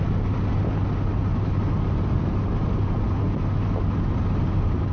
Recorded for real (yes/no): yes